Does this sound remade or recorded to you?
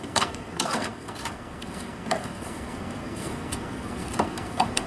remade